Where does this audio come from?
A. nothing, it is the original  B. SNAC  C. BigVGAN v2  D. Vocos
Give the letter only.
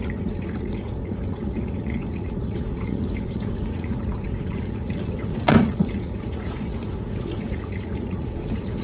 D